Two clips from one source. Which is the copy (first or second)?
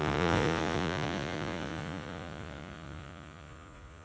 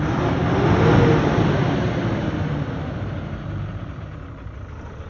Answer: first